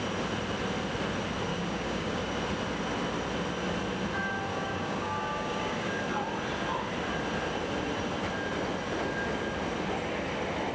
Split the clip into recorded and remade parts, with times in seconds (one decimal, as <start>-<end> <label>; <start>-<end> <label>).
0.0-1.5 recorded; 1.5-2.2 remade; 2.2-4.5 recorded; 4.5-6.0 remade; 6.0-10.7 recorded